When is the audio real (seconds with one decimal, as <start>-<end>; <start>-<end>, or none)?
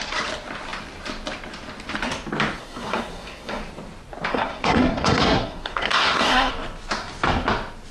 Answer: 0.0-2.6; 3.6-4.3; 6.5-7.9